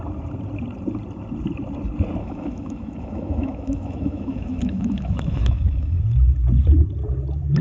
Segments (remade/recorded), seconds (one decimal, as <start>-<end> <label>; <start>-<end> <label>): 0.0-2.2 recorded; 2.2-6.0 remade; 6.0-7.6 recorded